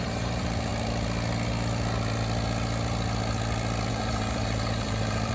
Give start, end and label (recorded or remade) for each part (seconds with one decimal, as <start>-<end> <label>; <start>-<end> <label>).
0.0-0.7 remade; 0.7-3.9 recorded; 3.9-5.3 remade